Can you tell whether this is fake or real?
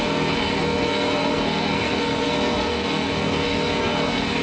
fake